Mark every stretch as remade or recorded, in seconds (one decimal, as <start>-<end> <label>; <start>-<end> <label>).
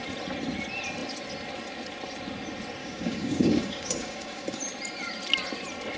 0.0-2.8 recorded; 2.8-4.6 remade; 4.6-6.0 recorded